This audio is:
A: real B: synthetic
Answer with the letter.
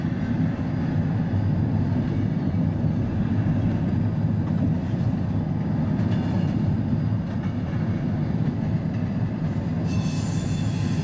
A